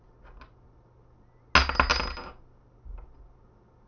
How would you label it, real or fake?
real